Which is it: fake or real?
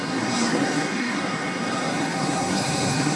fake